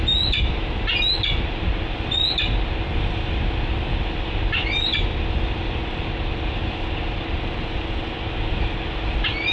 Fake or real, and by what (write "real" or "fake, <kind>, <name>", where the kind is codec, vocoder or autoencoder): real